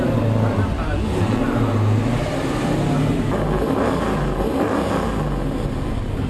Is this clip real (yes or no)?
yes